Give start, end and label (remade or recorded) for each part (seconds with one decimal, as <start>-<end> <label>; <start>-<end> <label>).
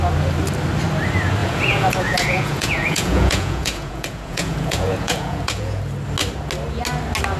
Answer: 0.0-1.4 recorded; 1.4-5.8 remade; 5.8-7.4 recorded